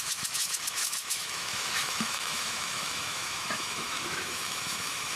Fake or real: fake